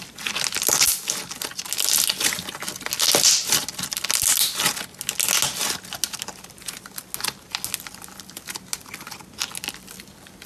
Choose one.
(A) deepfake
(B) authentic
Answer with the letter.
B